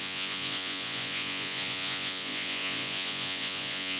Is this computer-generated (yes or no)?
yes